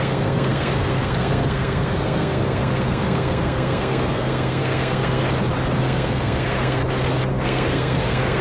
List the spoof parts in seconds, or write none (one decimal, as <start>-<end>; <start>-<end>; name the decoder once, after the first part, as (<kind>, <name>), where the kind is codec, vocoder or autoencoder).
0.0-5.2 (codec, SNAC); 5.8-6.8; 7.3-8.4